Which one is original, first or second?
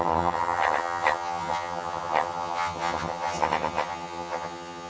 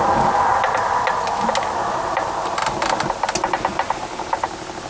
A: second